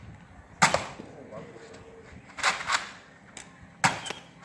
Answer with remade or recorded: recorded